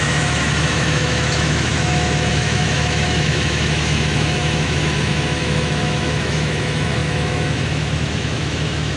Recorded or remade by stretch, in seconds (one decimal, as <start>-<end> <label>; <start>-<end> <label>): 0.0-9.0 remade